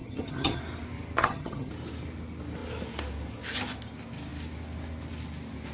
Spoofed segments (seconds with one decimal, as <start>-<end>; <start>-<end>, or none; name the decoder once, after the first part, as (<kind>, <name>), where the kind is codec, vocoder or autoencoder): 0.0-0.6 (vocoder, HiFi-GAN); 1.2-1.7